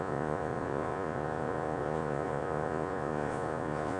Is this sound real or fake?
fake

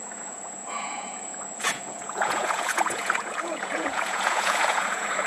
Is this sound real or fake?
fake